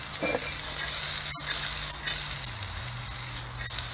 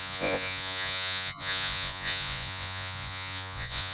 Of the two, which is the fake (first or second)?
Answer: second